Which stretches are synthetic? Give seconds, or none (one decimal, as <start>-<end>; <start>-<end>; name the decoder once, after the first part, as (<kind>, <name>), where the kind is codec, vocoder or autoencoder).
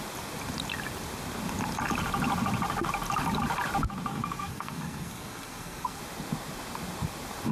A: 4.1-6.0 (codec, SNAC)